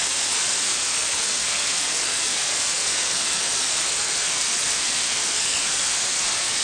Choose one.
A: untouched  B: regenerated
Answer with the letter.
B